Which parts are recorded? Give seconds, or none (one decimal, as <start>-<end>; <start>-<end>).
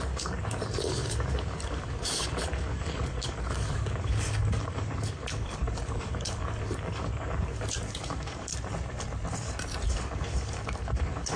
8.5-9.9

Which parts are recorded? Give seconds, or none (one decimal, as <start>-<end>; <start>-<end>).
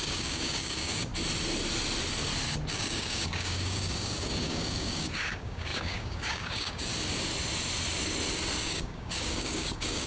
1.1-2.7; 6.9-8.6